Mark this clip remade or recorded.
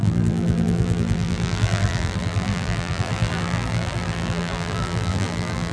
remade